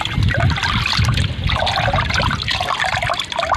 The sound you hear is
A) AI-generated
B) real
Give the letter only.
B